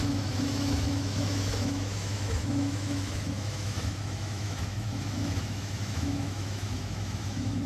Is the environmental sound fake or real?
fake